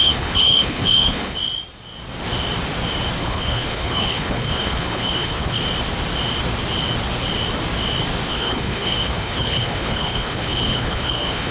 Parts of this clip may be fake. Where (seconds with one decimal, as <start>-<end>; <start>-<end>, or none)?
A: 0.0-1.4; 3.2-5.6; 8.3-11.5